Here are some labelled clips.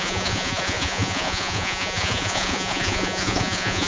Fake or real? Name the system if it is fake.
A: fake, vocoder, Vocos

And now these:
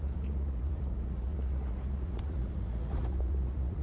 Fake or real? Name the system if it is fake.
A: fake, vocoder, Vocos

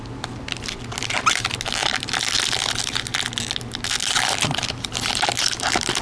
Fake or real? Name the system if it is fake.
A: real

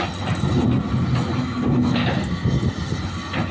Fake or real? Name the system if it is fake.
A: real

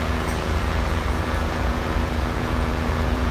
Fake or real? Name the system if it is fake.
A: fake, vocoder, Vocos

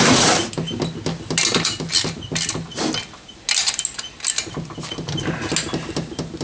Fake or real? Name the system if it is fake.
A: real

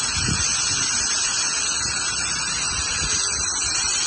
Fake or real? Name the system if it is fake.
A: real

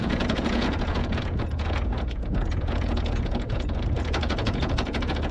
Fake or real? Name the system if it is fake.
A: fake, vocoder, Vocos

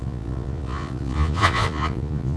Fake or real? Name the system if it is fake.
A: fake, vocoder, Vocos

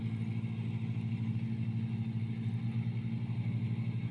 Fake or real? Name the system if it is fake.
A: real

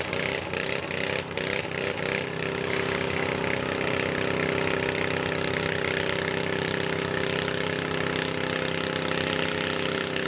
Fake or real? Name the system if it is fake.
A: real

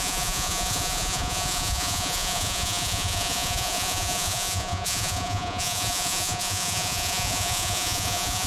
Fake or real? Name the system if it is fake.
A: fake, vocoder, Vocos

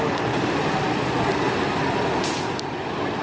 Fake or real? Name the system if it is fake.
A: real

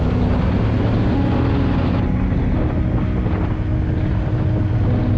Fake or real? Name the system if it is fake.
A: real